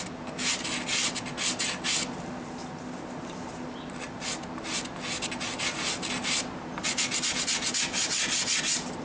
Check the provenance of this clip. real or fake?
real